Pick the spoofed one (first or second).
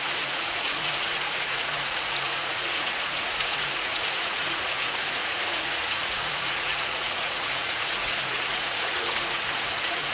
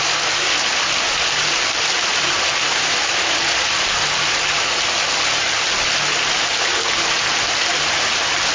first